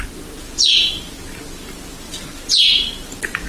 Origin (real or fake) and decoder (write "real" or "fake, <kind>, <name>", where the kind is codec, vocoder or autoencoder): real